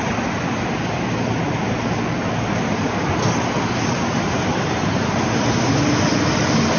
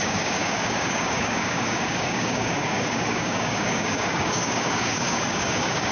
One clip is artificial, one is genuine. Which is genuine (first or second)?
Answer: first